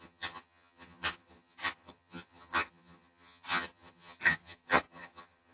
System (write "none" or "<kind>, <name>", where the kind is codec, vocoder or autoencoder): vocoder, HiFi-GAN